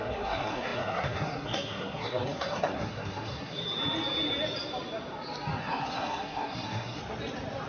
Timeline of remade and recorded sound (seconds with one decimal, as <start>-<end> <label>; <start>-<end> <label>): 0.0-3.6 remade; 3.6-5.6 recorded; 5.6-7.0 remade; 7.0-7.7 recorded